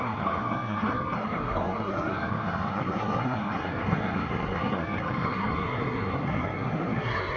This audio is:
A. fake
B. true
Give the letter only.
A